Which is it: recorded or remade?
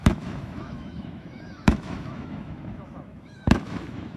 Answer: remade